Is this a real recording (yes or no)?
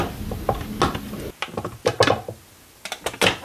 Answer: yes